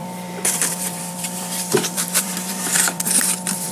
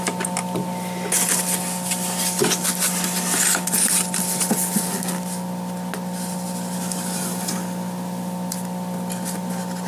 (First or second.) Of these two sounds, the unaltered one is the second